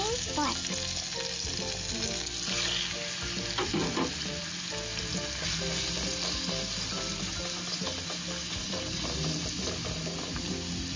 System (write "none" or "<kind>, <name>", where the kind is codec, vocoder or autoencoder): none